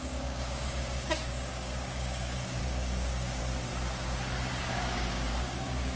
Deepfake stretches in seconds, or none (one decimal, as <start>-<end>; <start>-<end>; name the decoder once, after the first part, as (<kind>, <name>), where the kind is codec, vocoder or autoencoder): 0.0-3.4 (codec, DAC); 4.6-6.0